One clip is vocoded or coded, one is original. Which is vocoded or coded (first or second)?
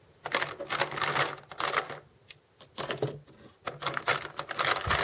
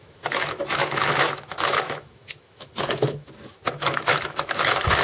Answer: second